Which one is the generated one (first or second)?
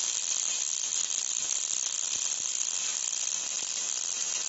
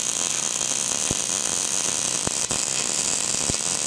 first